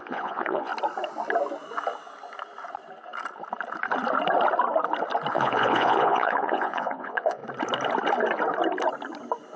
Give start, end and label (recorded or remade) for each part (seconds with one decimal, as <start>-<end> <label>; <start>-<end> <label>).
0.0-0.7 remade; 0.7-5.3 recorded; 5.3-7.4 remade; 7.4-9.6 recorded